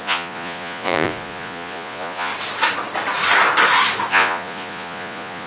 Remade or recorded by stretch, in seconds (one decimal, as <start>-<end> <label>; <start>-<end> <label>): 0.0-2.3 remade; 2.3-4.1 recorded; 4.1-5.5 remade